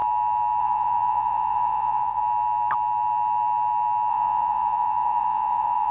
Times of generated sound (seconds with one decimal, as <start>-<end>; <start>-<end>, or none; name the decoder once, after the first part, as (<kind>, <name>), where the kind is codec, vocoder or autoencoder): 0.6-2.2 (vocoder, Vocos); 4.1-5.9